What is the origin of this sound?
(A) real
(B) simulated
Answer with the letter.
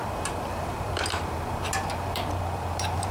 B